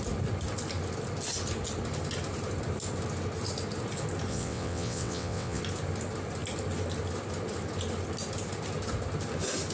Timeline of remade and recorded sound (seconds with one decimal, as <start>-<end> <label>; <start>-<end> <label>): 0.0-4.3 recorded; 4.3-5.6 remade; 5.6-9.7 recorded